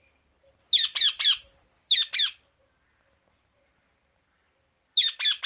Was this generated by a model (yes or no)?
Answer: no